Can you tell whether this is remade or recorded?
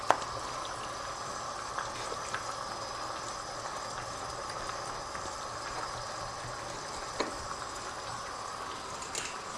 recorded